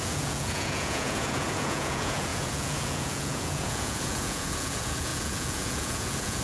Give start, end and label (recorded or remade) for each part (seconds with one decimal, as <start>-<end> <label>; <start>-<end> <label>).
0.0-6.4 remade

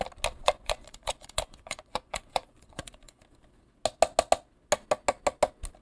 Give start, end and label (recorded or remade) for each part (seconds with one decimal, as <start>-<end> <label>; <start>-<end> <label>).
0.0-0.4 recorded; 0.4-3.2 remade; 3.2-5.8 recorded

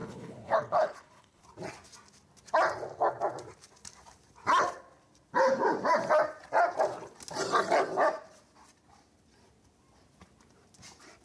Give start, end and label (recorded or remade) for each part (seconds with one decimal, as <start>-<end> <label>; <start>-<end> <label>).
0.0-1.4 remade; 1.4-11.2 recorded

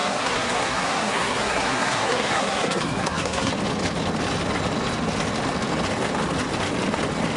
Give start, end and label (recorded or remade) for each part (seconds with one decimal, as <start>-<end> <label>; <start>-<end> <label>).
0.0-3.5 remade; 3.5-7.4 recorded

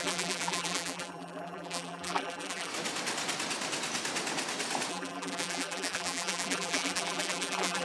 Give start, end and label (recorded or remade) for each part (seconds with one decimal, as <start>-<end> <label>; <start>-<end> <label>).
0.0-2.7 remade; 2.7-4.9 recorded; 4.9-7.8 remade

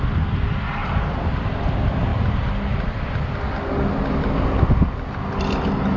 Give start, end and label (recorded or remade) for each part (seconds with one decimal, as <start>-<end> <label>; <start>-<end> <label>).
0.0-0.8 recorded; 0.8-1.7 remade; 1.7-6.0 recorded